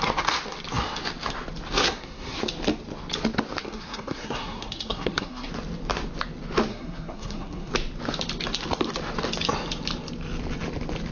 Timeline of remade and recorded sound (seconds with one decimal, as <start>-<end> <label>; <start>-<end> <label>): 0.0-1.8 recorded; 1.8-2.4 remade; 2.4-3.6 recorded; 3.6-5.5 remade; 5.5-6.7 recorded; 6.7-7.7 remade; 7.7-11.1 recorded